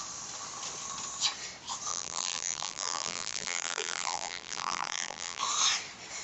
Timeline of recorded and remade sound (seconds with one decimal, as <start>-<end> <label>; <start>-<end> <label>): 0.0-1.9 recorded; 1.9-5.4 remade; 5.4-6.2 recorded